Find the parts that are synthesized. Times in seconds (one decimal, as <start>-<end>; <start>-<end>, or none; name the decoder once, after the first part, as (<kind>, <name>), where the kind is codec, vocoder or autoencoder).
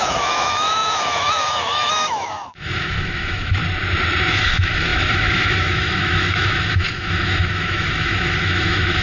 0.0-3.6 (autoencoder, DAC-VAE); 4.3-9.0